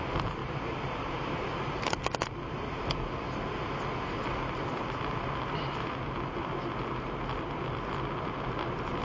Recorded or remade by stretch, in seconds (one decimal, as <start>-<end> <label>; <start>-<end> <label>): 0.0-0.4 recorded; 0.4-1.7 remade; 1.7-9.0 recorded